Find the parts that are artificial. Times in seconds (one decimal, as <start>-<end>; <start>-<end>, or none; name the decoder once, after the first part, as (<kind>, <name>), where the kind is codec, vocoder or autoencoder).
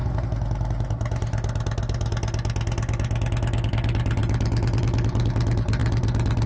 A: none